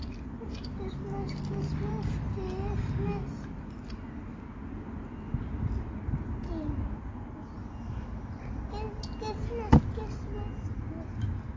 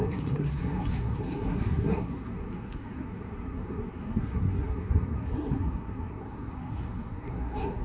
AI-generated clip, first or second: second